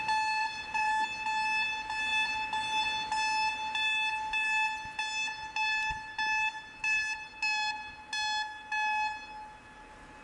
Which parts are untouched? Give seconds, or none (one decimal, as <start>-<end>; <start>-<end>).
0.0-0.4; 0.9-10.2